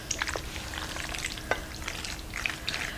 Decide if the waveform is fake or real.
real